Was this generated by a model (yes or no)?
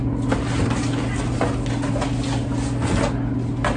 no